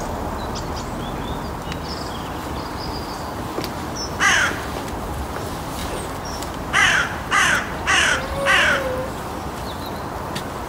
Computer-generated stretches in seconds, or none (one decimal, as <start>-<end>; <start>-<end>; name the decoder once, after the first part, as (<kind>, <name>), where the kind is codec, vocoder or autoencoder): 5.8-8.2 (vocoder, BigVGAN v2)